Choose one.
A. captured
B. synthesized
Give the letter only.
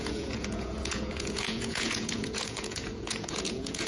B